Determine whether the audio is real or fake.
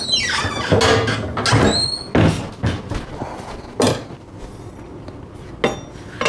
real